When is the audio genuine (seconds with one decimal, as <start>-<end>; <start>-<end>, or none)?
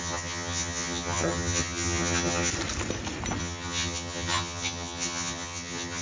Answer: 2.5-3.4